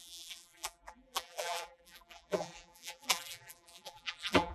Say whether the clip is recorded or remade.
remade